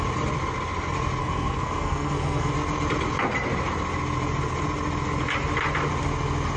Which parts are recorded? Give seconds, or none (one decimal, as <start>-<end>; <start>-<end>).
0.0-1.2; 2.5-6.6

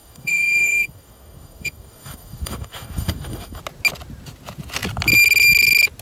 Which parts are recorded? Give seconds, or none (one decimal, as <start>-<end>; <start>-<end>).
3.6-6.0